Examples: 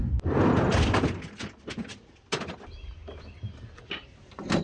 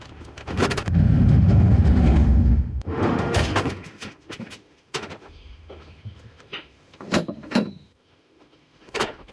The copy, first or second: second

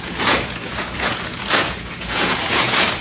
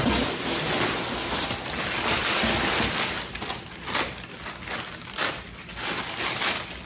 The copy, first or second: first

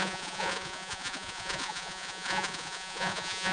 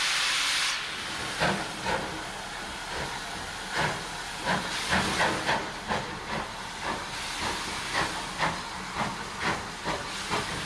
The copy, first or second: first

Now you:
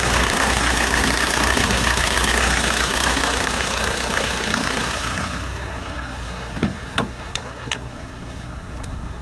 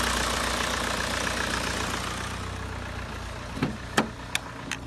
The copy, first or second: first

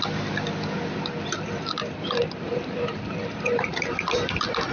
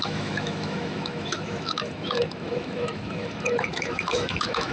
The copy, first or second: second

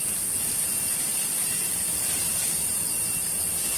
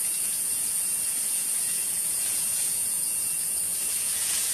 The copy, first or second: second